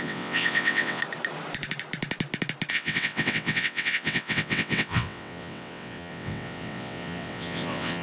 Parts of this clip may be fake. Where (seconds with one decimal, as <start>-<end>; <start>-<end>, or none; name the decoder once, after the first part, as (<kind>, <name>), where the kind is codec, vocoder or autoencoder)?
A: 0.0-1.0 (vocoder, WaveNeXt); 2.7-8.0